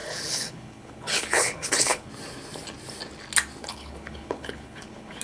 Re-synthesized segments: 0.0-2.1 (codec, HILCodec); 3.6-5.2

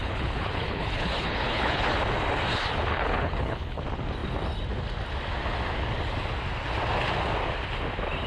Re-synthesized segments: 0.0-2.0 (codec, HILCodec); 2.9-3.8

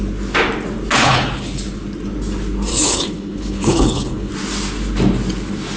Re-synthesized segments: 1.0-1.6 (codec, HILCodec); 2.7-4.3